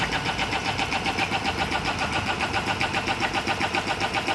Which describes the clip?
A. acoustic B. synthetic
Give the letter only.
A